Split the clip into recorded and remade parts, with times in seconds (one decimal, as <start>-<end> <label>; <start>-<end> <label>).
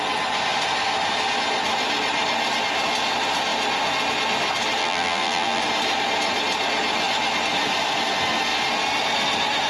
0.0-4.8 recorded; 4.8-5.6 remade; 5.6-9.7 recorded